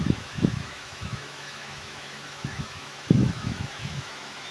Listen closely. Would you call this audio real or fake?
fake